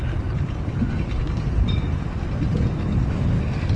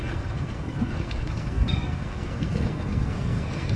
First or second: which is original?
first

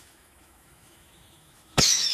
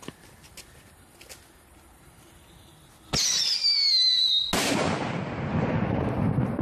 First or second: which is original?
second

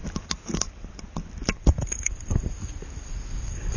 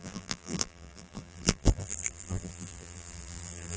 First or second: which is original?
first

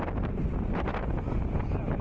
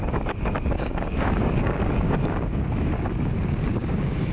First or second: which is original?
first